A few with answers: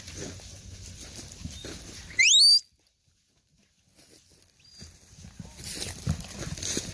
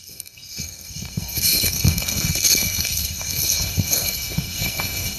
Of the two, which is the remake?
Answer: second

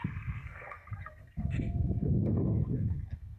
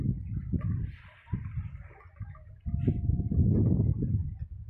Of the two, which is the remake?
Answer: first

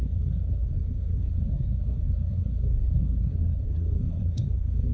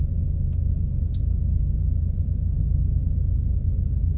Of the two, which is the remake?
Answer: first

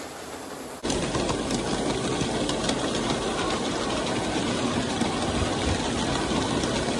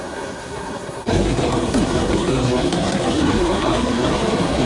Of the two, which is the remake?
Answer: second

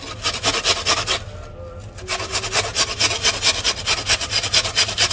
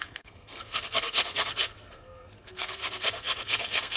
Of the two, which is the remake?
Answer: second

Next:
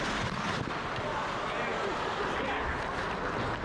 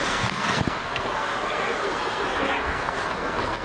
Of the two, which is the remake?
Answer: second